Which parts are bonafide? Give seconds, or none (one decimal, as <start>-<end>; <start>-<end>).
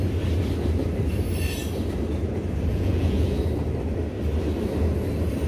0.0-2.7; 3.4-5.5